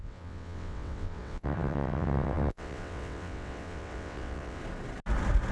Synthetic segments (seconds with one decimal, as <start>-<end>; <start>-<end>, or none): 0.0-4.6